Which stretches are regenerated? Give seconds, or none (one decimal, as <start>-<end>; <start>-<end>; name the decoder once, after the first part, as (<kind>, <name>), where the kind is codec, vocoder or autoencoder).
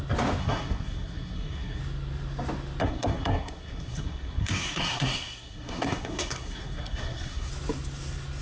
0.4-1.8 (codec, SNAC); 2.8-7.5